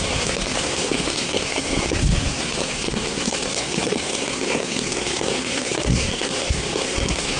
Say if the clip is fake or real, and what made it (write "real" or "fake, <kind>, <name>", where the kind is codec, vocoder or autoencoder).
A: fake, codec, SNAC